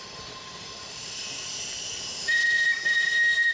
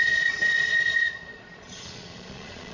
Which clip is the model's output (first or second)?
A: second